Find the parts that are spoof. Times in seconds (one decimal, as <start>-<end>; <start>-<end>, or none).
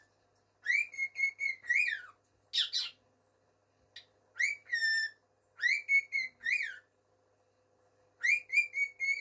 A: none